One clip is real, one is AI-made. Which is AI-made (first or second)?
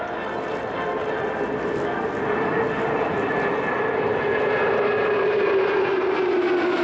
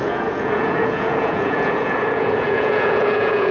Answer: second